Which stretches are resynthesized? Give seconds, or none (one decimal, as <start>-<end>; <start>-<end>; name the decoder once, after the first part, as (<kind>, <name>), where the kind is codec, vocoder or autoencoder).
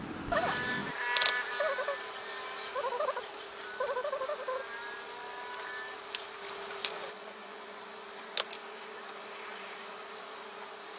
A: 6.8-7.8 (vocoder, Vocos)